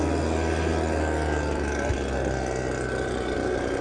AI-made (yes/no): no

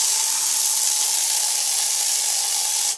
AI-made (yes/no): no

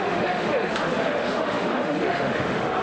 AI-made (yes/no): yes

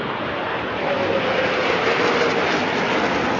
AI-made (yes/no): no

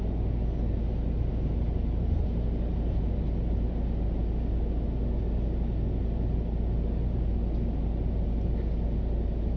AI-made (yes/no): no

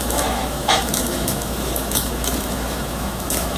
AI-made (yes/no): yes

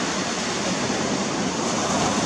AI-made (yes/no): no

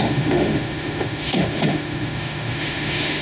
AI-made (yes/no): yes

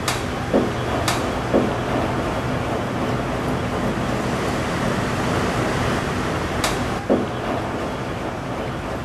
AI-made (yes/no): no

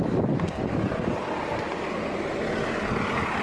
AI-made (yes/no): no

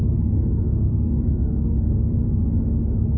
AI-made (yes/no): yes